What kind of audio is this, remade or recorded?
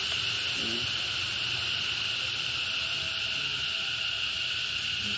recorded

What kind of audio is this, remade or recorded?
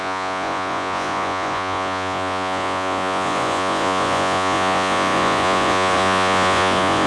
remade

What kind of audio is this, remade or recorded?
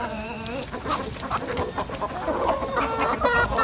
recorded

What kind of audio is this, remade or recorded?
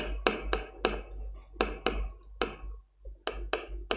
recorded